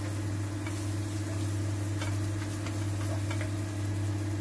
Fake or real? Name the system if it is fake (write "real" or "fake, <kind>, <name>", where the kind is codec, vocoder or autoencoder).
real